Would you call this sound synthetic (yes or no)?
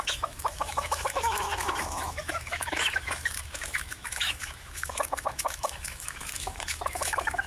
yes